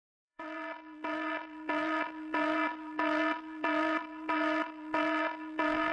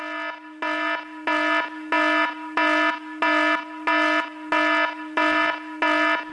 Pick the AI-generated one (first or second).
first